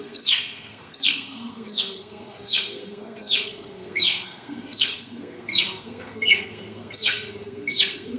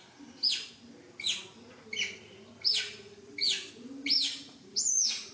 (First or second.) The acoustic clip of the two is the second